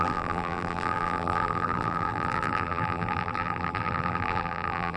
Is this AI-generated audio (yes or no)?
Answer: yes